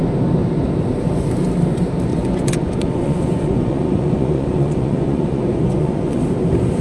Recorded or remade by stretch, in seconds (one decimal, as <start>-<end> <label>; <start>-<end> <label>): 0.0-2.1 recorded; 2.1-6.2 remade; 6.2-6.8 recorded